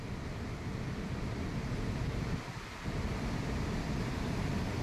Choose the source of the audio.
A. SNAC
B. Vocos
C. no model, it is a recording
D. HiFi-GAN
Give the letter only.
C